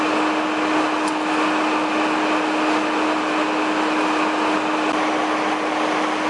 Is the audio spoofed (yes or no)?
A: no